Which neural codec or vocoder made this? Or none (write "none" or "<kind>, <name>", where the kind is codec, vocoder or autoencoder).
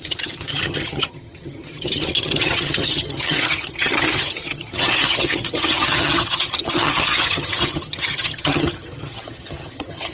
vocoder, HiFi-GAN